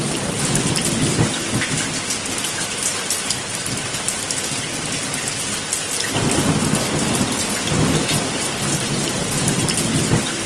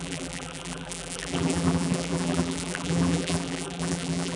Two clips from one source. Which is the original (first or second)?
first